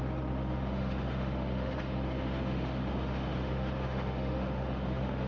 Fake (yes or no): yes